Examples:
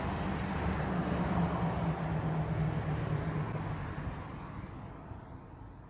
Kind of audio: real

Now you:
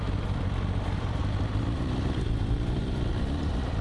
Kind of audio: fake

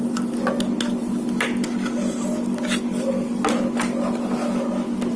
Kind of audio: real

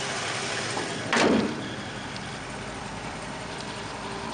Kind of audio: fake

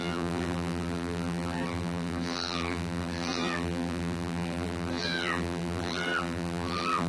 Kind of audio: fake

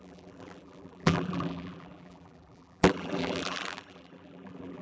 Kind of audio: fake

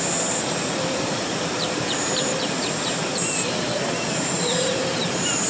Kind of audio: fake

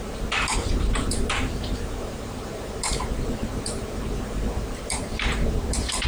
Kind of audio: fake